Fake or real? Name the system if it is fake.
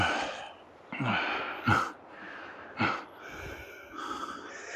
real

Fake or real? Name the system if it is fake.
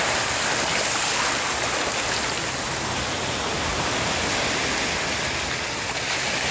real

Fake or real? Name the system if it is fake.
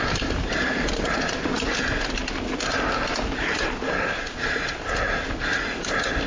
real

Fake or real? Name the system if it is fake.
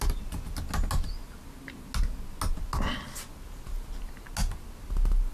real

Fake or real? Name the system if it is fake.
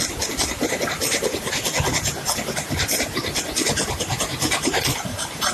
real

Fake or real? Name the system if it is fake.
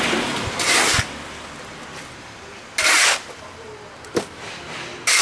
real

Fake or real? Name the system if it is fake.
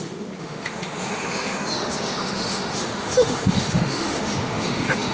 fake, autoencoder, DAC-VAE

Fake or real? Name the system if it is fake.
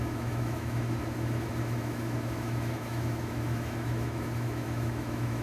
fake, autoencoder, DAC-VAE